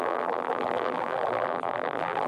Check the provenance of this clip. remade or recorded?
remade